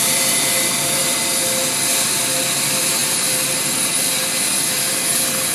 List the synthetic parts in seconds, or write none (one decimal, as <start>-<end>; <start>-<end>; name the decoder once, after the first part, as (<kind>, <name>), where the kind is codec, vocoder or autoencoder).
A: none